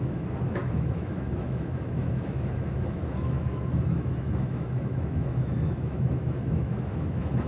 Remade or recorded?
remade